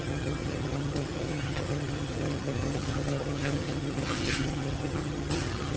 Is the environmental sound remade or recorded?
remade